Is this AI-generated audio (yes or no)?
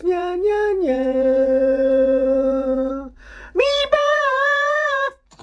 yes